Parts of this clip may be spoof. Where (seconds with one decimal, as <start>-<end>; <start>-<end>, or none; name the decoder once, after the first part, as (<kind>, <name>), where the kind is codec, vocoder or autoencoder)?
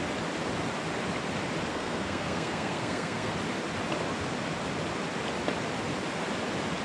1.7-3.3 (codec, SNAC)